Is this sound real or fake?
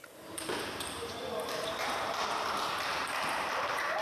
fake